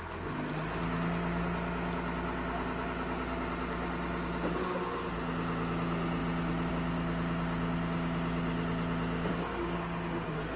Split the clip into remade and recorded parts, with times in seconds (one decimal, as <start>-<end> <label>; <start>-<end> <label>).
0.0-10.6 recorded